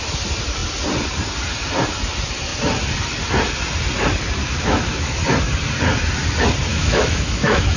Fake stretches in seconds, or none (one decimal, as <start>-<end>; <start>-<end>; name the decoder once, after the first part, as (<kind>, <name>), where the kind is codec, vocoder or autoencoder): 4.4-5.2 (autoencoder, DAC-VAE); 6.7-7.8